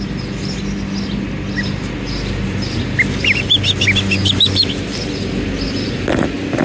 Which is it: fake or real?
real